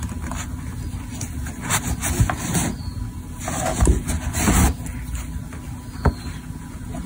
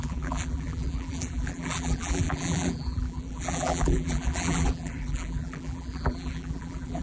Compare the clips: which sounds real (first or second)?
first